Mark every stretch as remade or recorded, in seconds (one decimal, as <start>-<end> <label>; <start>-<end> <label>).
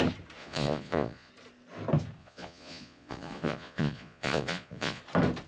0.0-0.4 recorded; 0.4-1.3 remade; 1.3-2.2 recorded; 2.2-5.0 remade; 5.0-5.5 recorded